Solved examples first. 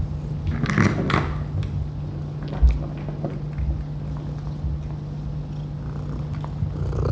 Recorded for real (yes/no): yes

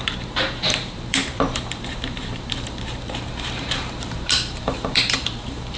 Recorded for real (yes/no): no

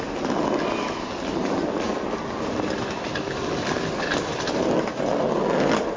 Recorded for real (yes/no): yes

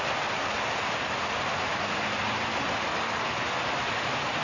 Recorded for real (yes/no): yes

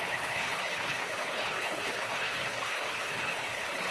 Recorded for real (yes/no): no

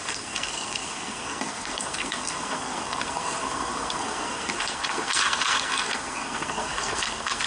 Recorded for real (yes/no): no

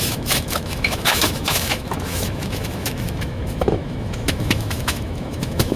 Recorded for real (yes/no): no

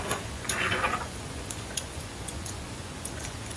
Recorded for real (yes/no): no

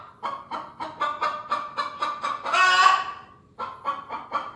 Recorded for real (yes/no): yes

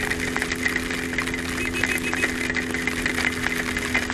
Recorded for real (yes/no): yes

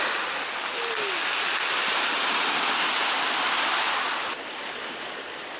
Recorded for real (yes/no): yes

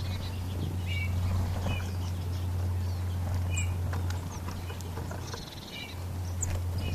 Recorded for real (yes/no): yes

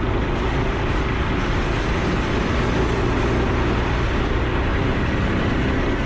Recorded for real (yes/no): yes